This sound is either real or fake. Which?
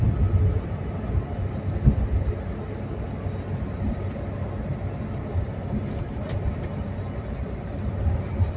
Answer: real